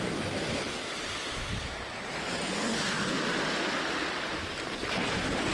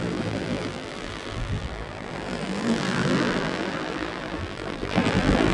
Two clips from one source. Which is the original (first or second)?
first